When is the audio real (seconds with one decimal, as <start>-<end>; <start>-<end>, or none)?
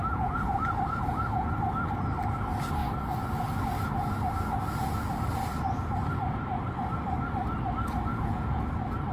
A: 0.8-8.1; 8.6-9.1